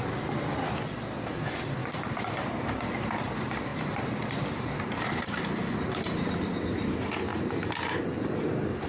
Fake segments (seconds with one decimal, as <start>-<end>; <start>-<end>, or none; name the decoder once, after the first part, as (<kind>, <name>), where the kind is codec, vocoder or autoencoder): 1.8-3.1 (vocoder, BigVGAN v2); 3.7-4.8